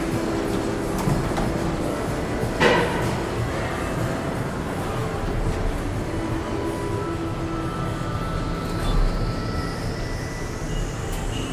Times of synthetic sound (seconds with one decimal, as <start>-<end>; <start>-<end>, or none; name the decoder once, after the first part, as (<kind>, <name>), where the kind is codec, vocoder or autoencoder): 1.6-2.1 (codec, DAC)